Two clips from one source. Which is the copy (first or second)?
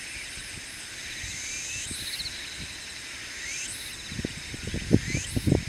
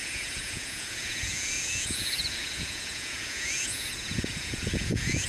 second